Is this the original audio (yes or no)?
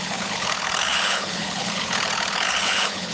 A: no